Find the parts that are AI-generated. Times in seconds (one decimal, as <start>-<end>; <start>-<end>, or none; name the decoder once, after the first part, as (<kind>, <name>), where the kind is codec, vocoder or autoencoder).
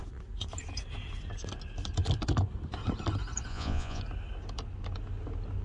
3.5-4.0 (vocoder, Vocos)